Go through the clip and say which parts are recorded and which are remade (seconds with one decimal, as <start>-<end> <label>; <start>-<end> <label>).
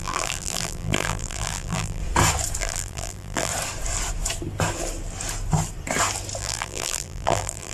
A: 0.0-2.0 remade; 2.0-2.6 recorded; 2.6-3.5 remade; 3.5-6.4 recorded; 6.4-7.7 remade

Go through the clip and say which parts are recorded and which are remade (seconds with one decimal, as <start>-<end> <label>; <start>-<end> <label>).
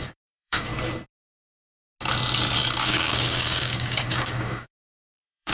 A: 0.0-0.7 remade; 0.7-2.8 recorded; 2.8-5.5 remade